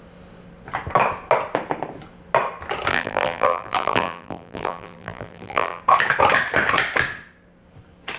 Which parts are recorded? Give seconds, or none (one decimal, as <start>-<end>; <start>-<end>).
0.0-2.9; 5.8-8.2